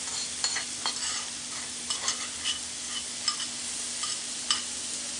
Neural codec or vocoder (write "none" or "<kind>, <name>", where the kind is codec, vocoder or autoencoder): none